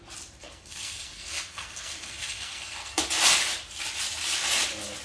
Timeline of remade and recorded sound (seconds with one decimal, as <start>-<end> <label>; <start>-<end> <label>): 0.0-0.4 recorded; 0.4-3.0 remade; 3.0-5.0 recorded